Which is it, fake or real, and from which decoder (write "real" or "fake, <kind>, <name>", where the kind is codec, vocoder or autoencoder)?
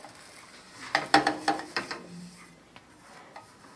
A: real